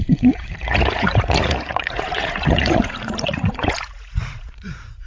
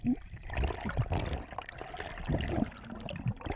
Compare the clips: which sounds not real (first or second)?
first